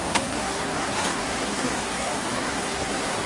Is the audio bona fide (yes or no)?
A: no